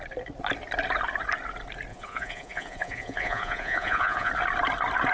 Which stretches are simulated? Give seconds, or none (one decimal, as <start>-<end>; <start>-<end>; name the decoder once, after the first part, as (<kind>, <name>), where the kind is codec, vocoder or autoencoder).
1.9-4.3 (vocoder, Vocos)